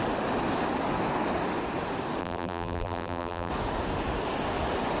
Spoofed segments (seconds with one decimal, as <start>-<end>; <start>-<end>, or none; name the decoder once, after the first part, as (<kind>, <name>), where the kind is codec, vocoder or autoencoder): 2.2-3.5 (vocoder, BigVGAN v2)